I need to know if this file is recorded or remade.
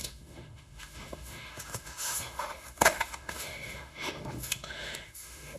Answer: remade